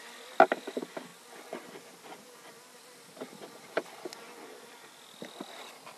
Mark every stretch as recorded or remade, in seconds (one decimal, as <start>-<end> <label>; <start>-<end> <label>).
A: 0.0-6.0 recorded